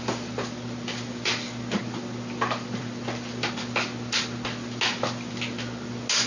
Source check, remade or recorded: recorded